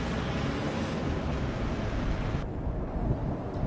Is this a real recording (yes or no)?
yes